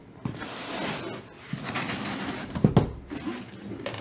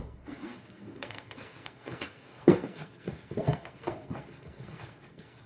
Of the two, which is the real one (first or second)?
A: first